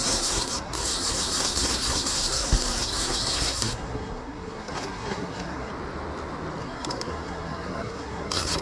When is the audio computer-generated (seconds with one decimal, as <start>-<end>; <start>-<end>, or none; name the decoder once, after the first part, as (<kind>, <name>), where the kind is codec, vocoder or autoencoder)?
0.0-5.7 (codec, SNAC); 6.6-8.6